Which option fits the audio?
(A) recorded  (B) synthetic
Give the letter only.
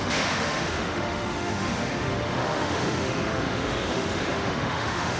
B